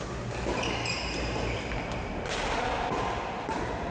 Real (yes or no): yes